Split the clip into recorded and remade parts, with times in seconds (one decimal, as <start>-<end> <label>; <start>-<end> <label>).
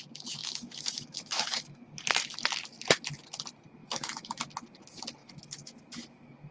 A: 0.0-0.4 recorded; 0.4-1.8 remade; 1.8-3.8 recorded; 3.8-4.4 remade; 4.4-5.2 recorded; 5.2-5.8 remade; 5.8-6.5 recorded